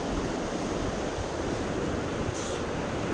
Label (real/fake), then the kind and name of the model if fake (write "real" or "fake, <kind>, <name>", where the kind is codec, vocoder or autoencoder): real